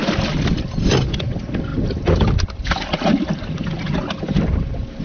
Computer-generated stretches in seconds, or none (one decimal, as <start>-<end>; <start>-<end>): none